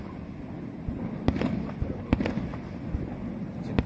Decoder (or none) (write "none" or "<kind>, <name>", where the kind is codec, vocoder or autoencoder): none